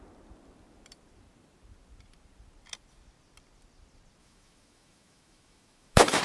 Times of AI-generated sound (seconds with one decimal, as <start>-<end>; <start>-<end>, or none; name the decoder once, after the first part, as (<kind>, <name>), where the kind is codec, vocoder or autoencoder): 4.2-6.2 (autoencoder, DAC-VAE)